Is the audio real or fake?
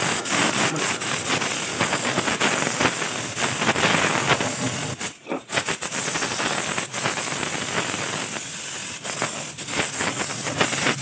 real